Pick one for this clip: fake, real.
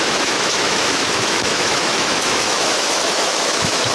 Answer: fake